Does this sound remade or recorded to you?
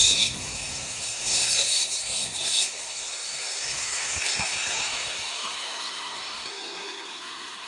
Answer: remade